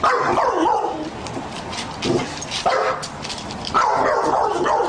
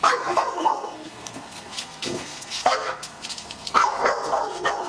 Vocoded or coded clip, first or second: second